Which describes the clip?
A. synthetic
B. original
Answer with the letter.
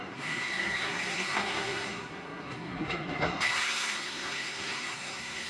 A